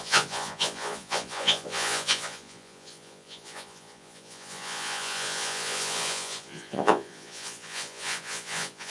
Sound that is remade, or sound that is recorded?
remade